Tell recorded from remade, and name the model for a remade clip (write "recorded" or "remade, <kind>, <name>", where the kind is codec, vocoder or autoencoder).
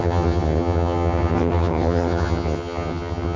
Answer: remade, vocoder, HiFi-GAN